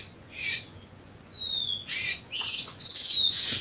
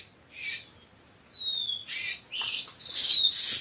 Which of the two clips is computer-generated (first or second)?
first